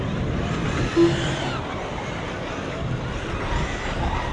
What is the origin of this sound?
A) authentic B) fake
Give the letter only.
A